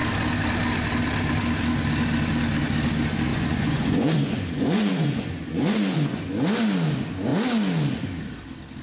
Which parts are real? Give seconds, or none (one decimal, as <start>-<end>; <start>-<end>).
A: 0.0-3.3; 6.2-8.8